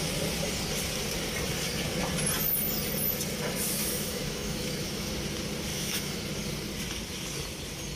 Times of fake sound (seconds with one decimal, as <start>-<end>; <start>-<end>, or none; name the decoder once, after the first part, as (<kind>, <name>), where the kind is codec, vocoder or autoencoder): 3.8-5.1 (autoencoder, DAC-VAE); 5.7-6.2